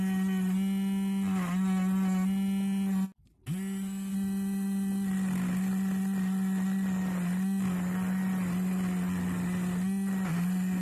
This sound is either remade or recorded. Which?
recorded